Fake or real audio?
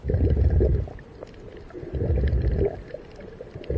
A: real